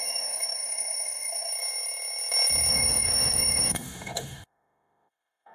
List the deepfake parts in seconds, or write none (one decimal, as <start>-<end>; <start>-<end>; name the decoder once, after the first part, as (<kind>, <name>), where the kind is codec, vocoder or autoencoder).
0.0-1.5 (autoencoder, DAC-VAE); 2.7-5.5